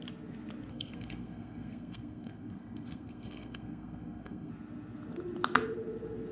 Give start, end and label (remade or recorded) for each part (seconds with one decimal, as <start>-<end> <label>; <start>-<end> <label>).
0.0-0.7 recorded; 0.7-4.5 remade; 4.5-6.3 recorded